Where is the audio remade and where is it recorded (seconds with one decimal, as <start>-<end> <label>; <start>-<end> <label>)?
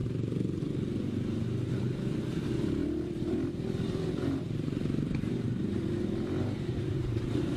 0.0-2.8 recorded; 2.8-7.6 remade